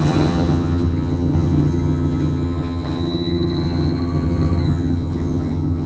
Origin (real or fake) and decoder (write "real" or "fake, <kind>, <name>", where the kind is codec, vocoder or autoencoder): fake, vocoder, HiFi-GAN